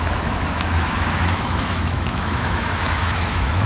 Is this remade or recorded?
remade